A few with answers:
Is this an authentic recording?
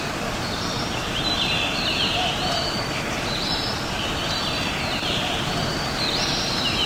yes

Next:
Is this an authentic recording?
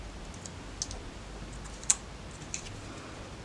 yes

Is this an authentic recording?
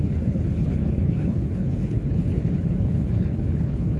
no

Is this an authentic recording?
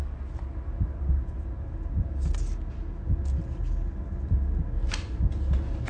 yes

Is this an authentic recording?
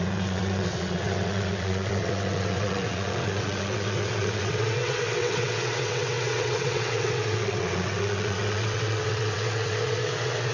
no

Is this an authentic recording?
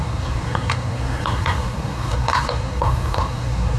no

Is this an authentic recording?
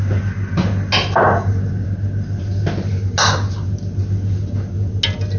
yes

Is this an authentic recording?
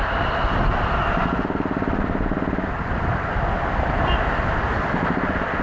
yes